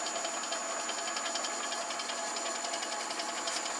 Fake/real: real